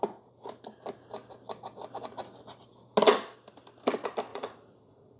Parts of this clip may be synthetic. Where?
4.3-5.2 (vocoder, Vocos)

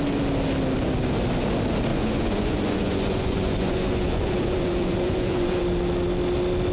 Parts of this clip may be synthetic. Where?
1.9-5.6 (vocoder, Vocos)

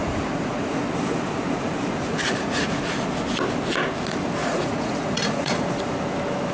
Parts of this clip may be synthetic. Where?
0.0-0.8 (vocoder, Vocos); 2.1-2.9; 4.4-5.7

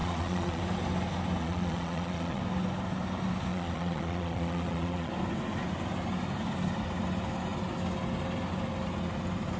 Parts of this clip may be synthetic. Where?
0.0-0.6 (vocoder, Vocos); 1.4-2.4; 3.5-5.1

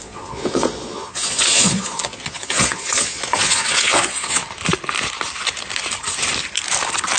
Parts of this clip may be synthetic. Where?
0.0-4.4 (vocoder, Vocos)

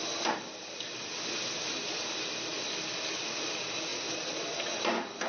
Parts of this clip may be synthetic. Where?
none

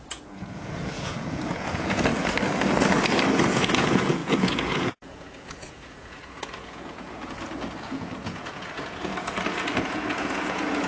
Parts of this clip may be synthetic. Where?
0.0-2.1 (vocoder, Vocos); 3.5-10.9

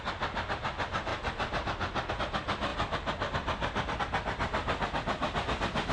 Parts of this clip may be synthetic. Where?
none